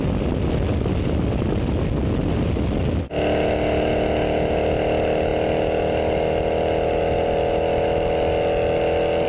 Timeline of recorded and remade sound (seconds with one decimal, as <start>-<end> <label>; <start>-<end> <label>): 0.0-9.3 recorded

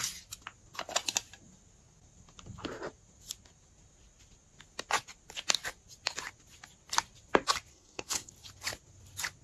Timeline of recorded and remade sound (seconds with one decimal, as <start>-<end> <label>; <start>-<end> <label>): 0.0-7.7 recorded; 7.7-8.3 remade; 8.3-9.4 recorded

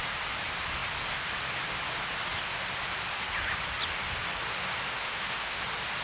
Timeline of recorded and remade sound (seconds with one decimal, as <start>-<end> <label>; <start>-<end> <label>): 0.0-4.9 recorded; 4.9-5.6 remade; 5.6-6.0 recorded

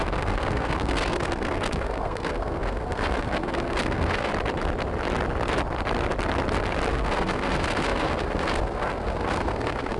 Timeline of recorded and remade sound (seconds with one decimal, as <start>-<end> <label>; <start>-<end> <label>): 0.0-4.3 remade; 4.3-6.9 recorded; 6.9-10.0 remade

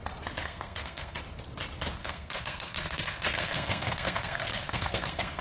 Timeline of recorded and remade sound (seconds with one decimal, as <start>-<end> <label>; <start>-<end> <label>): 0.0-0.4 recorded; 0.4-1.2 remade; 1.2-2.0 recorded; 2.0-5.4 remade